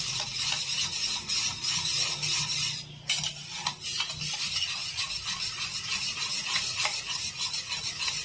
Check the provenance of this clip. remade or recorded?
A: recorded